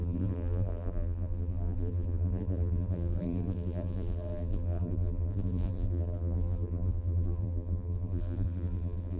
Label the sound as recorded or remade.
remade